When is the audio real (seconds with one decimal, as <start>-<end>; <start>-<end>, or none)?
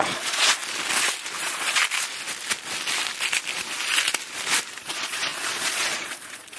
0.6-1.4; 1.8-4.8